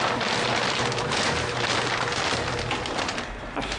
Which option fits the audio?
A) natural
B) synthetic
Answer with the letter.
A